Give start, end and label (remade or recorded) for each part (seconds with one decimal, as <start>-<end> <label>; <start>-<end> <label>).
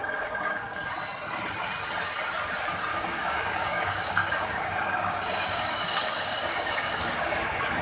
0.0-0.8 remade; 0.8-2.9 recorded; 2.9-7.8 remade